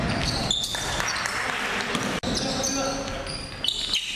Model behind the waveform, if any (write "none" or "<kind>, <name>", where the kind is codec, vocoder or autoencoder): none